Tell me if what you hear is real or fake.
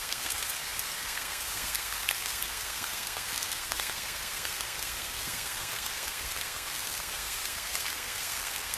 fake